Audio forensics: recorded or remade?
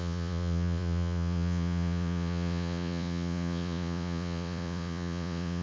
remade